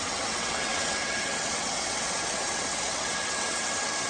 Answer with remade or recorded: remade